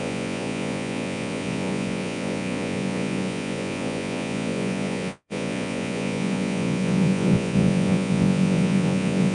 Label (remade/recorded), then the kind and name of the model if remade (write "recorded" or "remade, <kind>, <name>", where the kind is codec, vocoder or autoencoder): remade, vocoder, Vocos